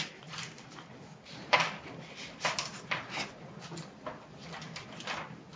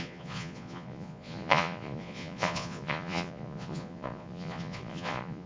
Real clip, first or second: first